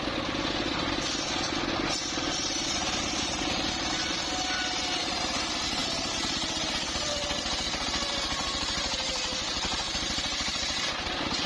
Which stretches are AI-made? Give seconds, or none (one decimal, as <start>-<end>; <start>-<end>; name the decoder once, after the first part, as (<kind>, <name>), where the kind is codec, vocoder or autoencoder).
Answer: none